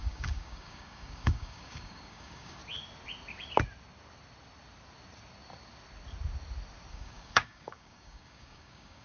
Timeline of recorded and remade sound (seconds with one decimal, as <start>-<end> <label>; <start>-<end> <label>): 0.0-2.6 remade; 2.6-6.9 recorded; 6.9-9.0 remade